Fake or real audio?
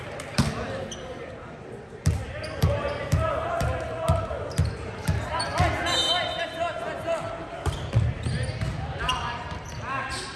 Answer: fake